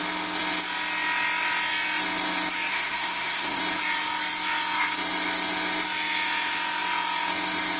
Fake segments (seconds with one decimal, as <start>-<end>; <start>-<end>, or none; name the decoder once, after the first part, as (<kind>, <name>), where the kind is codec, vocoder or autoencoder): 2.7-3.6 (codec, SNAC)